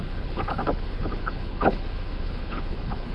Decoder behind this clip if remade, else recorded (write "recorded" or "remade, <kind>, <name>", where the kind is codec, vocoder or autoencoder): remade, codec, HILCodec